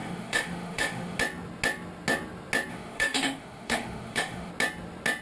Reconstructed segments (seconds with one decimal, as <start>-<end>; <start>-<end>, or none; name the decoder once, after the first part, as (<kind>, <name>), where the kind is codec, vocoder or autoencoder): 0.0-1.2 (autoencoder, DAC-VAE); 2.7-4.5